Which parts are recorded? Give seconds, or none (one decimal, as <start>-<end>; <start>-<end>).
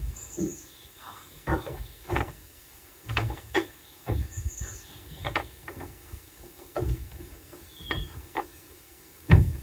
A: none